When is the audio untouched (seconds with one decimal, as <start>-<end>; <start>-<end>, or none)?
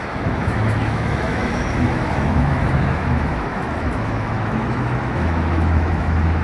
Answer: none